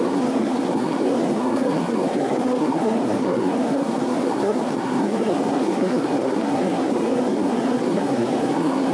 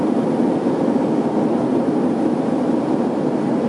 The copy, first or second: first